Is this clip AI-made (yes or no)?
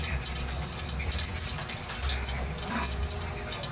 no